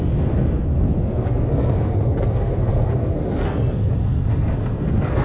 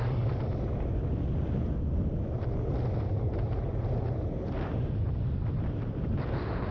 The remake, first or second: first